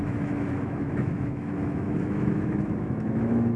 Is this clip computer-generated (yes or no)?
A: yes